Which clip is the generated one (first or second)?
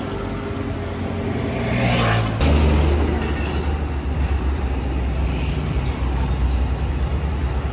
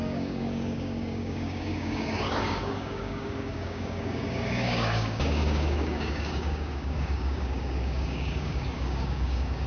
second